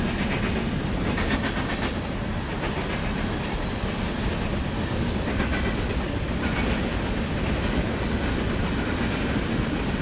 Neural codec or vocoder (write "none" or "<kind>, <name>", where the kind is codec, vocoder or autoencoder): none